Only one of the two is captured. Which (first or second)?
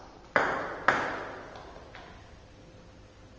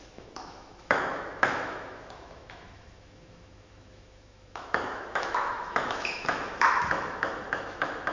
first